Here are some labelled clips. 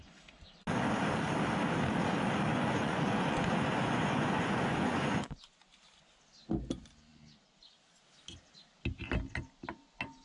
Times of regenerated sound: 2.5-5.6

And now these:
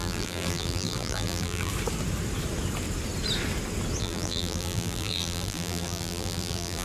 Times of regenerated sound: 0.0-1.7; 4.0-6.8

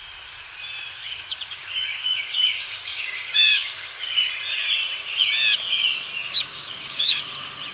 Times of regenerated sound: 1.0-4.3; 6.2-7.2

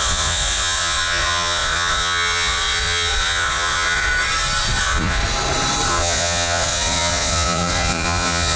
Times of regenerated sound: 0.0-4.1; 4.8-5.2; 5.9-8.6

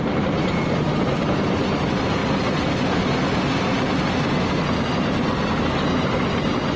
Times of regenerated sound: none